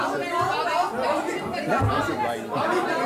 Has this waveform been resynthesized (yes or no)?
no